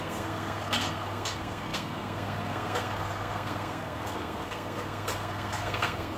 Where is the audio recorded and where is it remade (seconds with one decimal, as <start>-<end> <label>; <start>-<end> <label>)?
0.0-6.2 remade